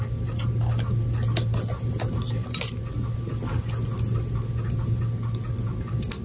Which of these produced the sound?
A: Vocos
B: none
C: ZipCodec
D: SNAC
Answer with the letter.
B